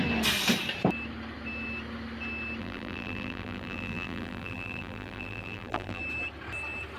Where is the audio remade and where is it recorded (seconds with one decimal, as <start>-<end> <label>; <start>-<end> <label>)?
0.0-2.6 recorded; 2.6-6.0 remade; 6.0-7.0 recorded